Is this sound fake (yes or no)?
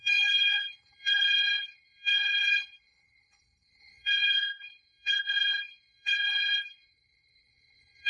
yes